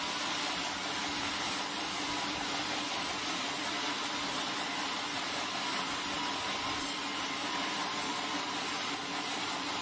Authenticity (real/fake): real